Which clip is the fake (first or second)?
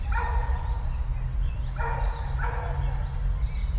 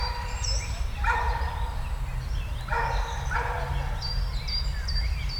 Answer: second